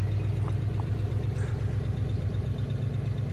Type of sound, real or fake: fake